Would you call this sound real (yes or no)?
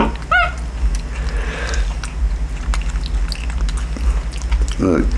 yes